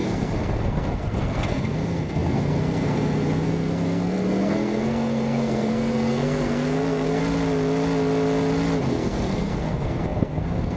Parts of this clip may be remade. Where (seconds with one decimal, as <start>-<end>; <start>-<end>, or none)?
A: 0.0-7.2; 8.9-10.8